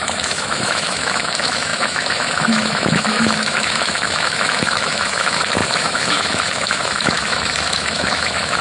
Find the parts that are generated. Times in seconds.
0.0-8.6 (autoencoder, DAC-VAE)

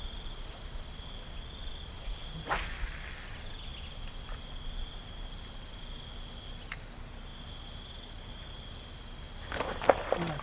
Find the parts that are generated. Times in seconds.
none

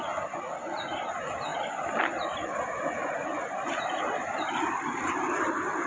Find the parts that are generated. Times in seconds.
1.5-2.3 (vocoder, BigVGAN v2)